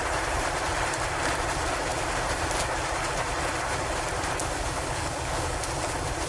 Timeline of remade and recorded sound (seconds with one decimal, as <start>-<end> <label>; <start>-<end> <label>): 0.0-4.4 recorded; 4.4-5.7 remade; 5.7-6.3 recorded